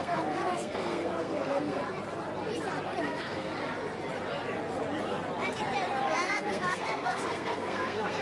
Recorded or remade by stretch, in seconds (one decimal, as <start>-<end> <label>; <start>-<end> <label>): 0.0-1.8 remade; 1.8-3.0 recorded; 3.0-3.5 remade; 3.5-6.0 recorded; 6.0-8.2 remade